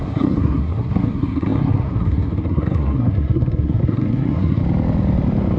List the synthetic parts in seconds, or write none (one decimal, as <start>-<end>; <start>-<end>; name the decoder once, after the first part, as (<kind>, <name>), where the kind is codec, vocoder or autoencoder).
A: 0.0-4.6 (codec, SNAC)